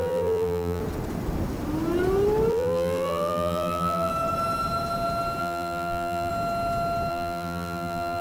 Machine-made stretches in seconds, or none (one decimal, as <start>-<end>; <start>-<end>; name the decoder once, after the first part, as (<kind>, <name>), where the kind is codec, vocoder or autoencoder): 0.0-0.8 (vocoder, BigVGAN v2); 2.5-4.1; 5.4-6.3; 7.1-8.2